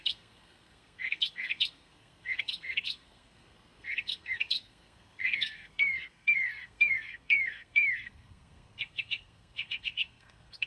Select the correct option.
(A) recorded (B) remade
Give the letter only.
B